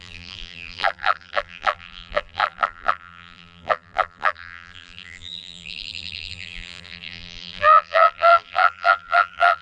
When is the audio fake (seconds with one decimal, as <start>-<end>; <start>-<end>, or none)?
0.0-9.6